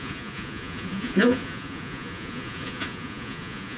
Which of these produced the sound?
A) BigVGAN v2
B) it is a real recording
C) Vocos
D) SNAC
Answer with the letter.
C